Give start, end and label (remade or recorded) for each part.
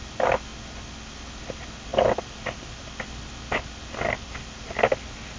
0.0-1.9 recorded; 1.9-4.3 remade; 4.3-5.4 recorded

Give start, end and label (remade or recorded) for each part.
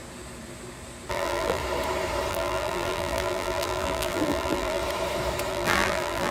0.0-1.1 recorded; 1.1-1.6 remade; 1.6-2.3 recorded; 2.3-4.8 remade; 4.8-5.5 recorded; 5.5-6.3 remade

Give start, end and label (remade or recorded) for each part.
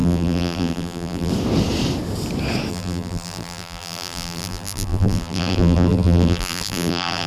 0.0-1.3 remade; 1.3-2.7 recorded; 2.7-7.3 remade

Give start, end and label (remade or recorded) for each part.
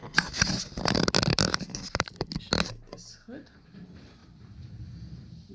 0.0-1.3 recorded; 1.3-2.4 remade; 2.4-4.2 recorded; 4.2-5.5 remade